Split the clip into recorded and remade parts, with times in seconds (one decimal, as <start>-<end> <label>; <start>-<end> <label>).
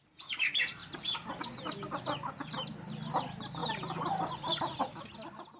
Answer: 0.0-5.6 recorded